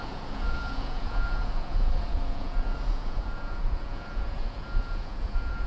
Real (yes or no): no